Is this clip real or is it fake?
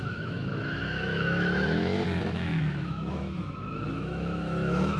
fake